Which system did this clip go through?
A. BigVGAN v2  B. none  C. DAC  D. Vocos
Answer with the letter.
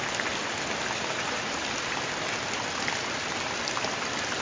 B